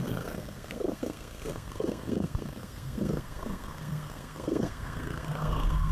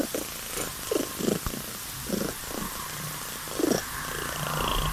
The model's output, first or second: first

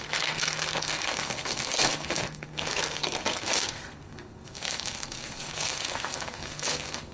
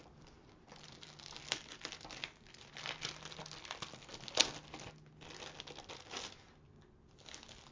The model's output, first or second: first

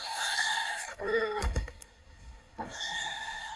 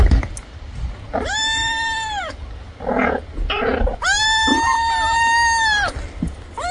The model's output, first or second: first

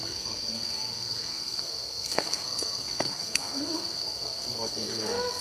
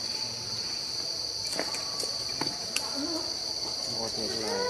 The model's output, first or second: first